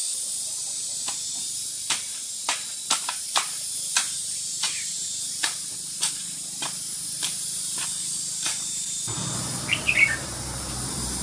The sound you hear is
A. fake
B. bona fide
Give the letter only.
A